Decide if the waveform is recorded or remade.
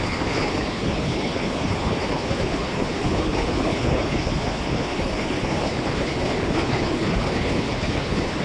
remade